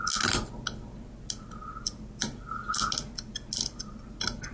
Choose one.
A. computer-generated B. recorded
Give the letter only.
B